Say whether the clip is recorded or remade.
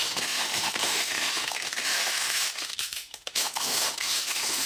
remade